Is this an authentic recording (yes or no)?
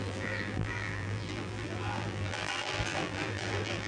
no